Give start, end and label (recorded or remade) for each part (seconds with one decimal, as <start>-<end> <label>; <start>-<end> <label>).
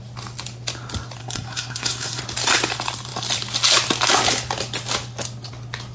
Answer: 0.0-1.2 recorded; 1.2-2.2 remade; 2.2-5.9 recorded